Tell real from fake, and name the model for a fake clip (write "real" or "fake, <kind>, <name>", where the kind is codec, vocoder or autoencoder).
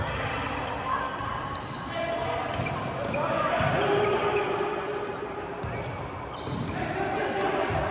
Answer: real